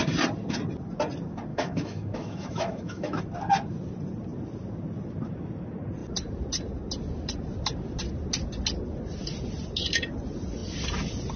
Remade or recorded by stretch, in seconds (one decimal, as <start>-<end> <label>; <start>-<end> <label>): 0.0-1.5 recorded; 1.5-3.2 remade; 3.2-11.4 recorded